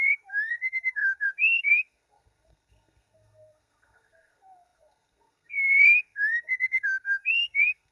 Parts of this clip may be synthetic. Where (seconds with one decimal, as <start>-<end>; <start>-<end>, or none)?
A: 0.0-7.9